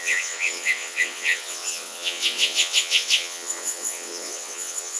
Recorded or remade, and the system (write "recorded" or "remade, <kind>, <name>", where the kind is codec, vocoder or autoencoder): remade, vocoder, WaveNeXt